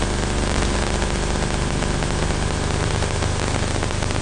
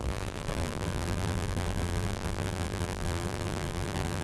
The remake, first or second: second